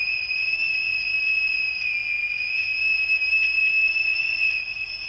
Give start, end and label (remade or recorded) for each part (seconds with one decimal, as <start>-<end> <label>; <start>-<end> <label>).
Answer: 0.0-4.1 recorded; 4.1-5.1 remade